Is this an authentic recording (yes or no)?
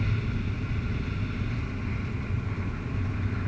yes